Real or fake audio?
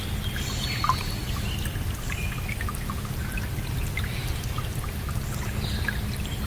real